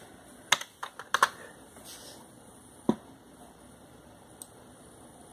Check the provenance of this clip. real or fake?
real